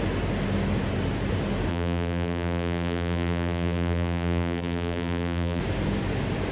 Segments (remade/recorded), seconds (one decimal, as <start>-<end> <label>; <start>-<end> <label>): 0.0-1.7 recorded; 1.7-5.6 remade; 5.6-6.5 recorded